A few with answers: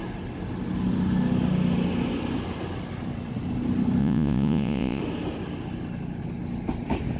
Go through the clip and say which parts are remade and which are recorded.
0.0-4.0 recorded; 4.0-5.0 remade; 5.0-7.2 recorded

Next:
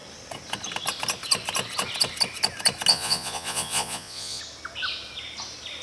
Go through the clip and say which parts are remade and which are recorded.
0.0-2.9 recorded; 2.9-4.4 remade; 4.4-5.8 recorded

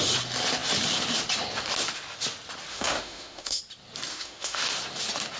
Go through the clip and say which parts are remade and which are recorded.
0.0-2.7 recorded; 2.7-3.6 remade; 3.6-4.1 recorded; 4.1-4.6 remade; 4.6-5.4 recorded

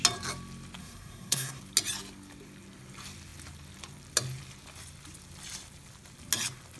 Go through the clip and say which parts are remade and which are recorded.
0.0-0.8 recorded; 0.8-1.6 remade; 1.6-6.8 recorded

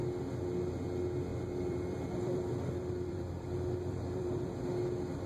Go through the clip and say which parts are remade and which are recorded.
0.0-1.3 recorded; 1.3-4.5 remade; 4.5-5.3 recorded

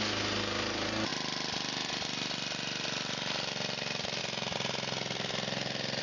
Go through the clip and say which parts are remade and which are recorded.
0.0-6.0 recorded